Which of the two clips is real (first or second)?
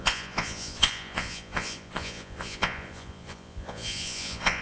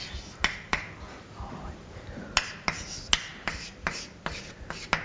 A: second